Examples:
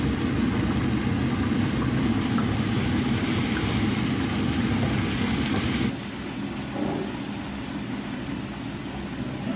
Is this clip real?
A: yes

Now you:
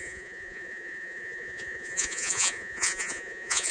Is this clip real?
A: no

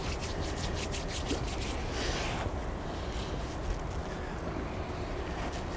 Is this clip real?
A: yes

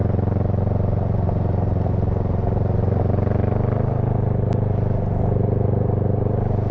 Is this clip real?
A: yes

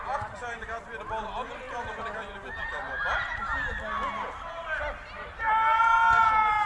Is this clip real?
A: yes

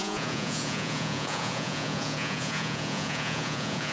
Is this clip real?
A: no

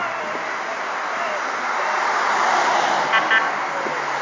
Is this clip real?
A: yes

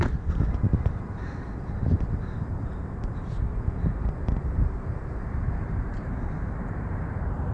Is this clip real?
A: no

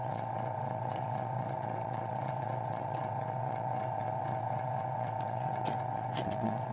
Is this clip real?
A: no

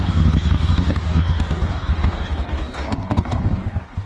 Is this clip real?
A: no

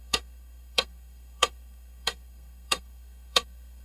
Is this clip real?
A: no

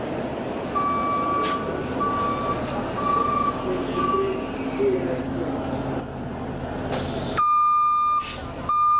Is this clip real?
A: yes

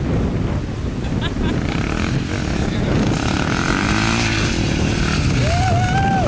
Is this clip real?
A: yes